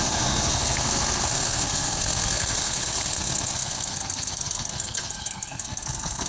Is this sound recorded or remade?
remade